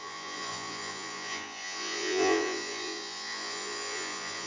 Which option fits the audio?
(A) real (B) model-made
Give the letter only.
B